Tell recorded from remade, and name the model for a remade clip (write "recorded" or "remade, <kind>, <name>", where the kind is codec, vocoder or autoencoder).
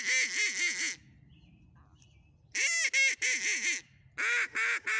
recorded